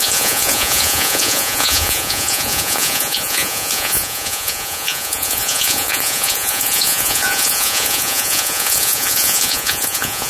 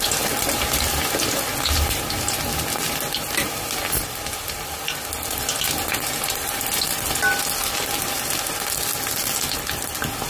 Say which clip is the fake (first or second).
first